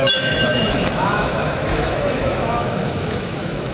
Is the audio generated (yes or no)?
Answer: yes